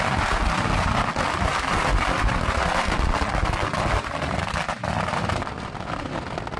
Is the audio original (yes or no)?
yes